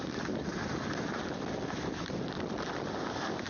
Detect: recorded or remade recorded